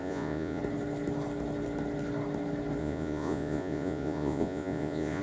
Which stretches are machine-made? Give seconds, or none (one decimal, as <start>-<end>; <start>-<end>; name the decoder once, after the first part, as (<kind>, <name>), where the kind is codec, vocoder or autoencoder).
0.0-0.6 (vocoder, Vocos); 2.8-5.2